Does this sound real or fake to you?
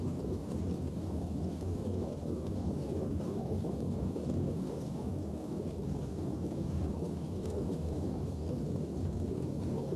fake